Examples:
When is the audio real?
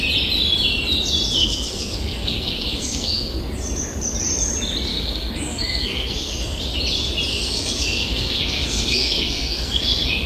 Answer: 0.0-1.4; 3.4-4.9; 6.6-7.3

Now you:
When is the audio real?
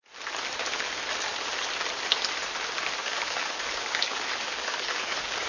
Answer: 0.0-3.0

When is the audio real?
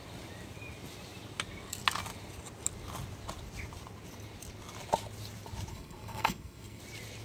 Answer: 0.0-5.7; 6.8-7.2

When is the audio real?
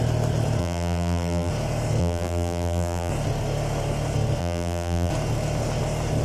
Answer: 0.0-0.6; 1.5-2.0; 3.1-4.4; 5.1-6.2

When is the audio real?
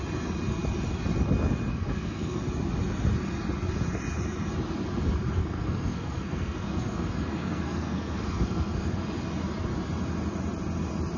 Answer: 0.0-1.7; 2.4-5.4; 9.0-11.2